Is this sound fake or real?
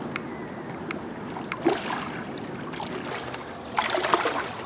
real